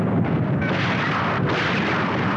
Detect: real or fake fake